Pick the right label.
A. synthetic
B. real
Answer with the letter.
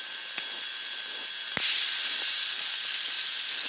B